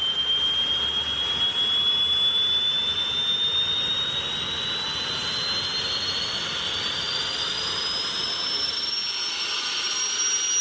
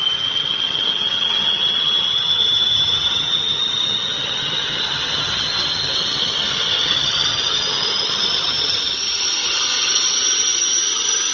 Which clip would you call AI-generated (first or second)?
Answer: second